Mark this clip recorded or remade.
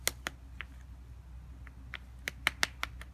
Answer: recorded